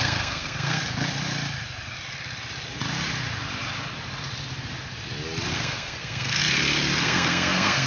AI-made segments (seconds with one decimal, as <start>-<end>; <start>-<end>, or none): 0.0-0.8; 5.5-6.4; 7.0-7.9